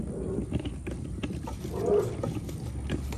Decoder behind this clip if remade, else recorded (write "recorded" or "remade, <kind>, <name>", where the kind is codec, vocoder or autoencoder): recorded